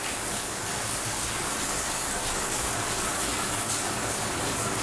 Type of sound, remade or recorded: remade